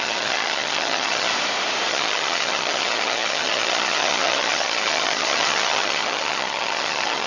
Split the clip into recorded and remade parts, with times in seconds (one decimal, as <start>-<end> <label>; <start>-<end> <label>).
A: 0.0-1.3 remade; 1.3-1.9 recorded; 1.9-7.3 remade